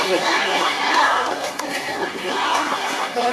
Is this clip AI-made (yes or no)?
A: yes